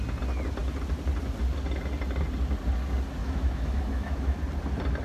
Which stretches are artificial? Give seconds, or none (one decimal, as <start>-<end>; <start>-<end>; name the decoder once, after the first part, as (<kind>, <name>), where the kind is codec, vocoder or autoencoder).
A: 3.2-4.4 (autoencoder, DAC-VAE)

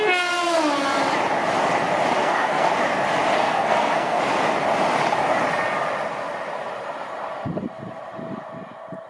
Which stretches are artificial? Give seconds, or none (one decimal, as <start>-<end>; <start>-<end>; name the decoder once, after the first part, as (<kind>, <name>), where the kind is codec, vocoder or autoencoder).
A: 2.2-2.7 (codec, SNAC); 3.4-4.2

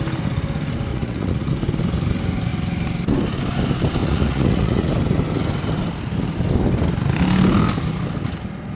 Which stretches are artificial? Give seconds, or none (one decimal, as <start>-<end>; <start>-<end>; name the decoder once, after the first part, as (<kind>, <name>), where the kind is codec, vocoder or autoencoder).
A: 0.9-1.5 (vocoder, Vocos); 4.0-4.9